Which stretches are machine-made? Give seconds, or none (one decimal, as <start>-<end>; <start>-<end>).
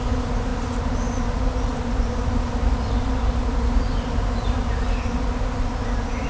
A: none